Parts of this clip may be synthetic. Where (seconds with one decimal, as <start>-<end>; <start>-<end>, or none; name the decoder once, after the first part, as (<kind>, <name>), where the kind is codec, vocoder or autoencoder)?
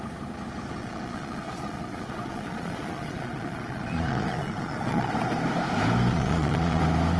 0.8-5.1 (vocoder, Vocos); 6.1-6.8